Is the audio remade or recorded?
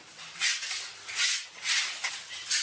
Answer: recorded